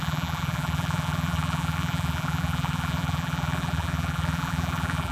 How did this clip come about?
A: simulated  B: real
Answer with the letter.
A